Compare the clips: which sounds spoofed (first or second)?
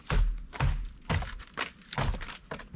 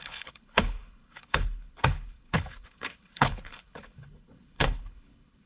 second